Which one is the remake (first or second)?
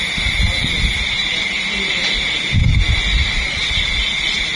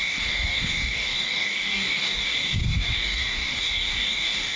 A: second